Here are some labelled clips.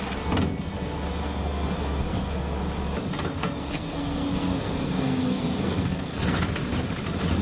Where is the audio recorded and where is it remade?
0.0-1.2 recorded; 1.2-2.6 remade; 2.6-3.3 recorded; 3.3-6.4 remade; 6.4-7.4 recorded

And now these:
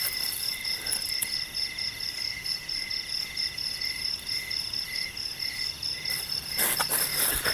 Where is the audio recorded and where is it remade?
0.0-7.5 recorded